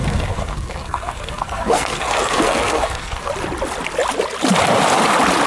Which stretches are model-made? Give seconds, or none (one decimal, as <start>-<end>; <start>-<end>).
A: 0.0-3.3

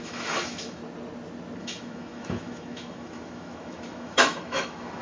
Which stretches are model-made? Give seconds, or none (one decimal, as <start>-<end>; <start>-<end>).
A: 0.0-0.8; 1.6-5.0

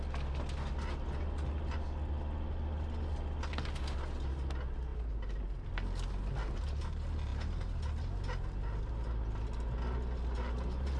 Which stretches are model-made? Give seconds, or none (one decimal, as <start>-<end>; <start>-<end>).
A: none

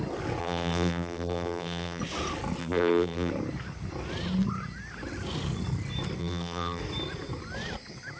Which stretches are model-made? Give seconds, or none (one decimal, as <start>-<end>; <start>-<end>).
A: 0.4-2.0; 2.6-3.3; 6.2-6.8